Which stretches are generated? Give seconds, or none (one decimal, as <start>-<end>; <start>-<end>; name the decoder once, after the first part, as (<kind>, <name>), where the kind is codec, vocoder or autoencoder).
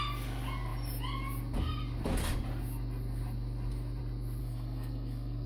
4.4-5.5 (codec, SNAC)